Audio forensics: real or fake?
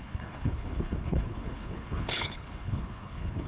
fake